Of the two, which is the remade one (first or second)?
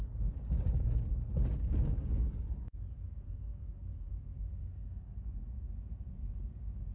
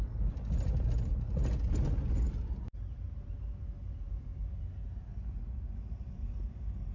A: first